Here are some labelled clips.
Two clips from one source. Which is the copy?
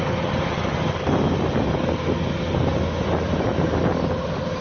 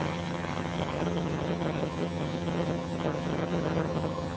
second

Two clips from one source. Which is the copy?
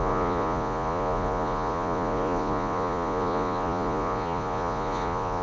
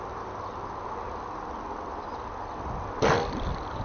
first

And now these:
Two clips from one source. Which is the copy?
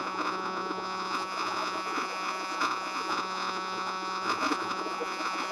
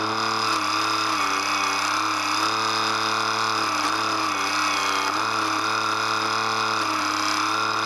first